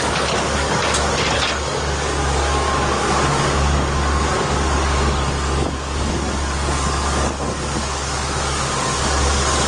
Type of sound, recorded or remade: remade